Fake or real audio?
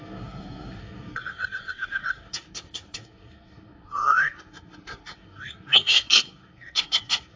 fake